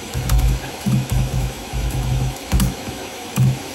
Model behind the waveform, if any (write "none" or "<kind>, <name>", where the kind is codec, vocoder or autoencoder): autoencoder, DAC-VAE